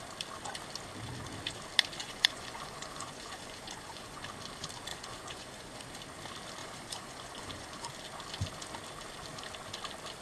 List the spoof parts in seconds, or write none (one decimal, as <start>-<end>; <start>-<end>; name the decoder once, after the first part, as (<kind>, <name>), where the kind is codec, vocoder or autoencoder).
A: 2.0-4.2 (vocoder, Vocos); 4.9-5.8; 6.6-7.9